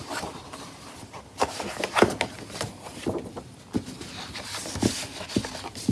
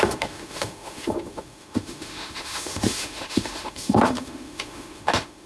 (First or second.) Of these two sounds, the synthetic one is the second